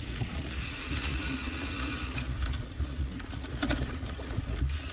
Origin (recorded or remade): remade